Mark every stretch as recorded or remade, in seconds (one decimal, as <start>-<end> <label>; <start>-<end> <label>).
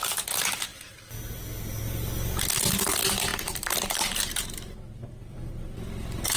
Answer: 0.0-3.3 recorded; 3.3-5.7 remade; 5.7-6.4 recorded